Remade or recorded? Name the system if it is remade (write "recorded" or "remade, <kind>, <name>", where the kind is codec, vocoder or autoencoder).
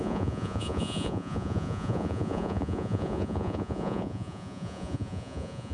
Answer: remade, vocoder, Vocos